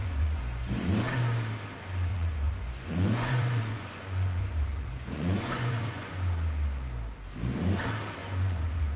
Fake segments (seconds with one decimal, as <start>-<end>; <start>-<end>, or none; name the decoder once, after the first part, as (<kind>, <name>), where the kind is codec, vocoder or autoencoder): 0.0-0.9 (vocoder, Vocos); 2.1-6.1; 8.2-9.0